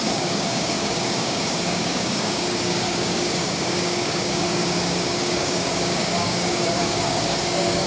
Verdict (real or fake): fake